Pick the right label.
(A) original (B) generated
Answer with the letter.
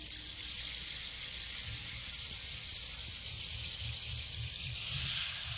B